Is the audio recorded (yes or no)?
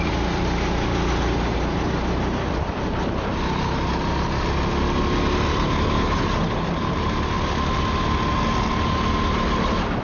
yes